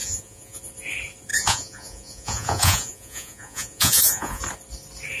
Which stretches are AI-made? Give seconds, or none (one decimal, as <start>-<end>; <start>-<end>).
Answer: 0.0-0.6; 1.3-4.4